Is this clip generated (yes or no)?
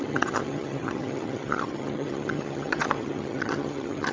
yes